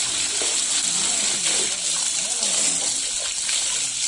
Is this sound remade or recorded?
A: recorded